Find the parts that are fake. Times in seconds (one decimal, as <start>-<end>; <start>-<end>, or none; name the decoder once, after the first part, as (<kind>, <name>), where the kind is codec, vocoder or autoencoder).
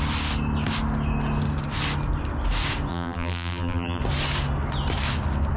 2.9-4.0 (vocoder, BigVGAN v2)